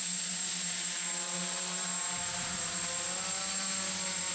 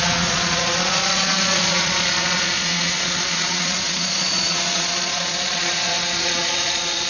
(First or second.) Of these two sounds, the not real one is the second